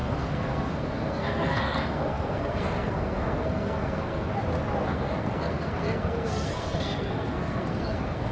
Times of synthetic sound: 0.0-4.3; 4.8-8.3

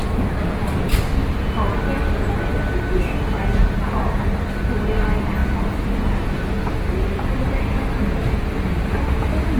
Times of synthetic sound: none

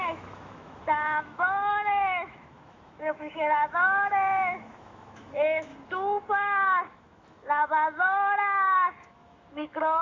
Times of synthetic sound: 0.0-5.7; 6.3-10.0

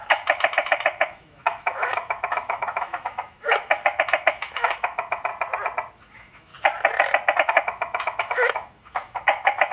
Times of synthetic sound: 0.0-5.3; 6.0-6.5; 7.4-9.7

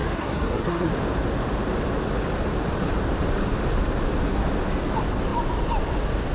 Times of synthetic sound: 0.0-0.9

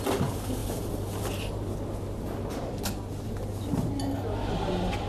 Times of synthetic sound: none